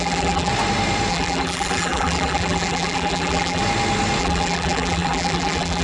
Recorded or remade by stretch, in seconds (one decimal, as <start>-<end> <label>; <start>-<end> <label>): 0.0-0.5 remade; 0.5-1.1 recorded; 1.1-3.6 remade; 3.6-4.2 recorded; 4.2-5.8 remade